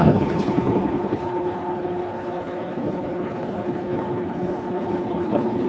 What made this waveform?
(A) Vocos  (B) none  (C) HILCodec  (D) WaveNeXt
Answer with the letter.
C